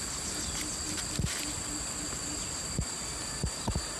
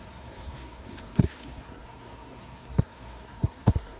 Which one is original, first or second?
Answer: first